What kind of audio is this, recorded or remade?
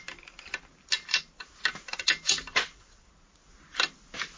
recorded